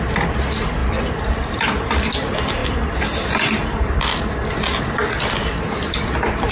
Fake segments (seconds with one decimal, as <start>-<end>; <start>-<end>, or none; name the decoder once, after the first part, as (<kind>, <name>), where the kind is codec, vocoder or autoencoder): 0.8-1.8 (vocoder, BigVGAN v2)